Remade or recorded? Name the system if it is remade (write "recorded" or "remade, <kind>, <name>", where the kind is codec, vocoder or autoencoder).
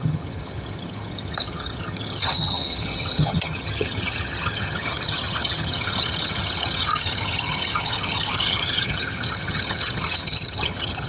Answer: remade, vocoder, HiFi-GAN